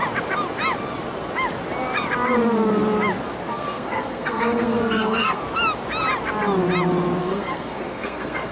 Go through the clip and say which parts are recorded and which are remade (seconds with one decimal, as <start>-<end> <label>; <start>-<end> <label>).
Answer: 0.0-3.5 recorded; 3.5-5.4 remade; 5.4-7.2 recorded; 7.2-8.5 remade